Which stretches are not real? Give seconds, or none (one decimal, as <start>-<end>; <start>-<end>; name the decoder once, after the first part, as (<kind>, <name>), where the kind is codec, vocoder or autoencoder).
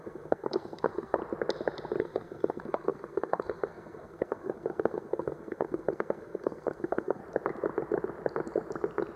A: 0.0-1.2 (codec, SNAC); 2.0-7.2